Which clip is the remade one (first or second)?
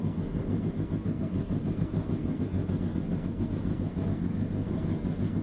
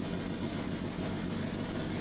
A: first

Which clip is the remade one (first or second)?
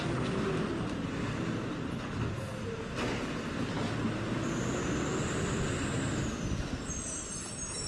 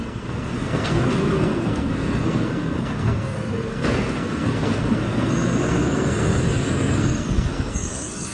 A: second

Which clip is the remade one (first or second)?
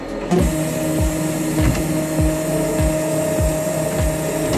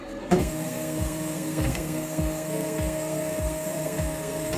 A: second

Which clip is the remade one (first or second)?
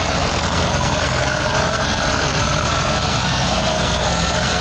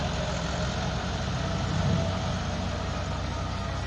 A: first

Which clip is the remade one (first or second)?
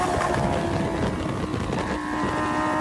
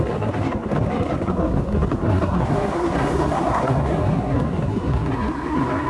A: second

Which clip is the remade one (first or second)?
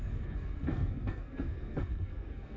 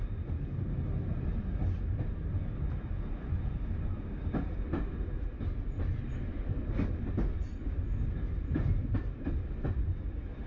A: first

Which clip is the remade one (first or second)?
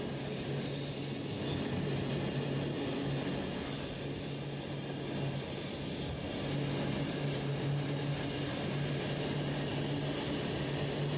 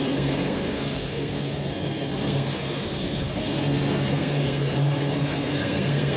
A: second